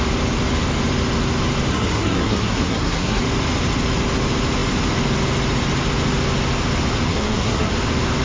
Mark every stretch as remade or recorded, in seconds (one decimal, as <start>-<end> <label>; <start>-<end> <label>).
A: 0.0-1.7 recorded; 1.7-3.2 remade; 3.2-7.1 recorded; 7.1-7.7 remade; 7.7-8.2 recorded